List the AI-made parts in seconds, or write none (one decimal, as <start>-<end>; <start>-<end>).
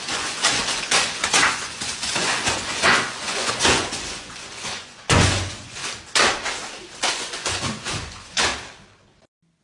0.0-5.8; 7.1-8.5